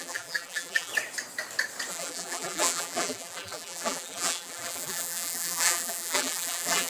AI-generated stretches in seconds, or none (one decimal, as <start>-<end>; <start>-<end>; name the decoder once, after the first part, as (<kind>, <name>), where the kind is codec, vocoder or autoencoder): 0.0-0.9 (vocoder, BigVGAN v2); 1.9-6.9